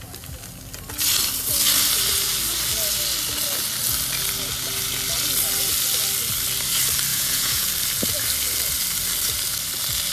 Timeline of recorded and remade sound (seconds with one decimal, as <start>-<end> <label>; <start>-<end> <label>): 0.0-7.1 recorded; 7.1-7.7 remade; 7.7-10.1 recorded